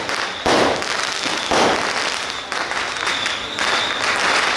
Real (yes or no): yes